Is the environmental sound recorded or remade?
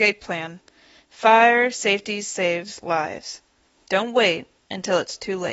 remade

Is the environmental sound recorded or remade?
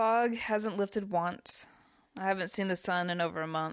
recorded